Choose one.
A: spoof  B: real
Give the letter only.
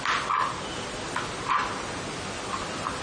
B